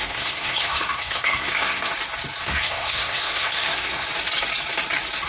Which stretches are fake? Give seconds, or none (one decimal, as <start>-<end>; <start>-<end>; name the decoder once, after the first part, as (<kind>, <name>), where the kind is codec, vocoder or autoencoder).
0.0-1.9 (codec, SNAC); 2.4-4.1